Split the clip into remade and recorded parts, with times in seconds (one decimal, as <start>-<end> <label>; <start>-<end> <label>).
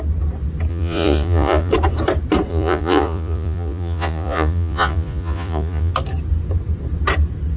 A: 0.0-0.7 recorded; 0.7-1.7 remade; 1.7-2.5 recorded; 2.5-5.9 remade; 5.9-7.6 recorded